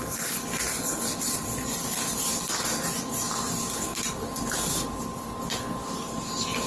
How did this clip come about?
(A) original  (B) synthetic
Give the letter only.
A